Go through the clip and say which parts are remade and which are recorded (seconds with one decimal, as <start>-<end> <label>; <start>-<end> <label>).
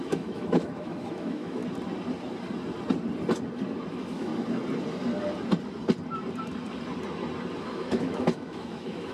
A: 0.0-1.6 remade; 1.6-3.9 recorded; 3.9-4.3 remade; 4.3-7.6 recorded; 7.6-9.1 remade